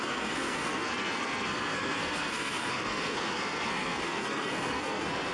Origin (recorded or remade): remade